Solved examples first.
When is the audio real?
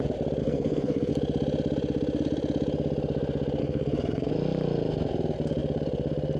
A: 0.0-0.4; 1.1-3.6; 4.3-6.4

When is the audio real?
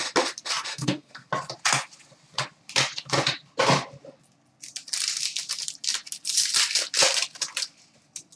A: 0.0-0.7; 1.3-8.4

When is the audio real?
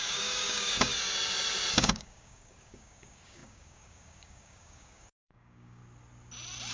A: 0.9-1.7; 5.8-6.7